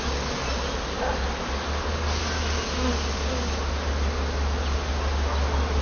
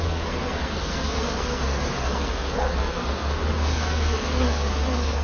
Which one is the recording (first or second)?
first